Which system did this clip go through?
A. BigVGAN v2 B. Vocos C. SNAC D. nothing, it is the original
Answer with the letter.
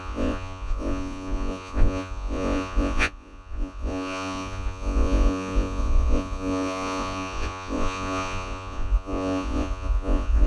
B